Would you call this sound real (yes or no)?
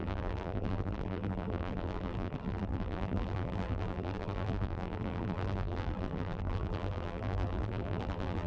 no